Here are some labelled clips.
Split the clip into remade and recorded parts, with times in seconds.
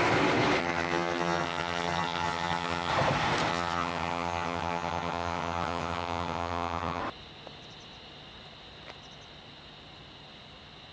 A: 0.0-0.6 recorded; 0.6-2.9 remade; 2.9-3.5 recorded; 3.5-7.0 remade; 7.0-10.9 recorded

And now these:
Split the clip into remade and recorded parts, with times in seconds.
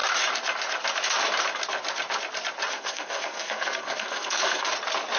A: 0.0-2.7 recorded; 2.7-4.7 remade; 4.7-5.2 recorded